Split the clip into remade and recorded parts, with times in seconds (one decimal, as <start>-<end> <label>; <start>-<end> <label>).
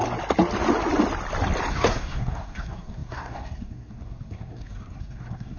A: 0.0-1.7 recorded; 1.7-5.6 remade